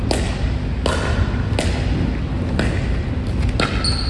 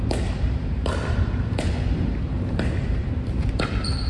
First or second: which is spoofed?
second